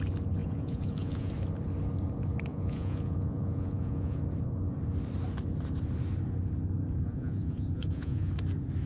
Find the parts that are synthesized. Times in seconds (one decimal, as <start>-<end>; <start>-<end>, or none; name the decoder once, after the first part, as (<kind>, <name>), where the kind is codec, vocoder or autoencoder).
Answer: 0.4-1.3 (vocoder, Vocos); 2.5-4.2; 7.1-8.3